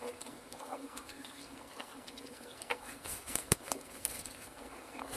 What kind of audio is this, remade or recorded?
remade